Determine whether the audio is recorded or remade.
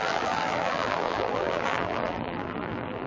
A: remade